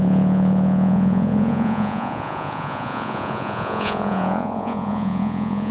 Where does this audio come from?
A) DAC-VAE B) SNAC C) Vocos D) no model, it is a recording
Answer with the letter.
C